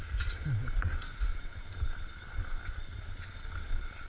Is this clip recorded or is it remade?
recorded